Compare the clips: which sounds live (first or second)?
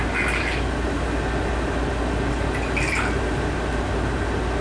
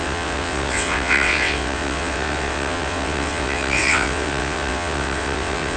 first